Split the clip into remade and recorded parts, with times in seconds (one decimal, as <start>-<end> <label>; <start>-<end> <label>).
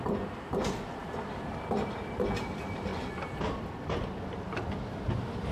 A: 0.0-5.5 recorded